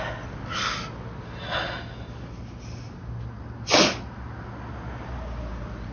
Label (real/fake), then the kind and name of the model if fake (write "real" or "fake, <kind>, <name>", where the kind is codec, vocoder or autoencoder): real